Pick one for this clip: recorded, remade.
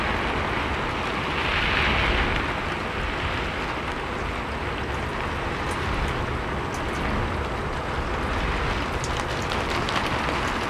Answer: recorded